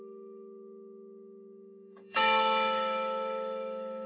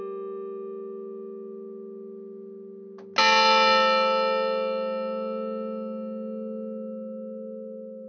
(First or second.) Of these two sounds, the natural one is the second